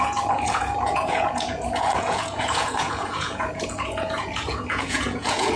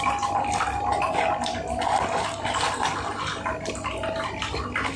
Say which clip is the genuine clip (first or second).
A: second